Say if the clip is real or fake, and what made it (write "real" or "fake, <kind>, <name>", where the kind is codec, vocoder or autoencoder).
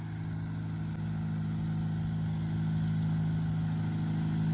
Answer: real